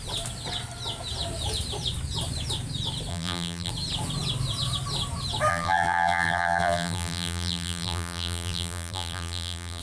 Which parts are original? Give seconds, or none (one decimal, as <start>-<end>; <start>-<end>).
0.0-3.1; 3.7-5.5